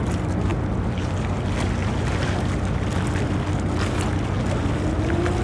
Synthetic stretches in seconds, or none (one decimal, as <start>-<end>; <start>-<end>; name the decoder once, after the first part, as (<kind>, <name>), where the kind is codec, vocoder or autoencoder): none